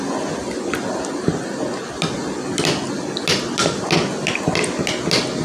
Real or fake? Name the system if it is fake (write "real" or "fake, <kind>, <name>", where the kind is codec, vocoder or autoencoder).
real